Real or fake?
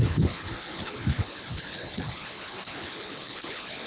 fake